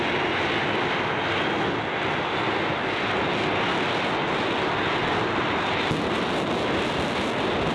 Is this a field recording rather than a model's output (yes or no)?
yes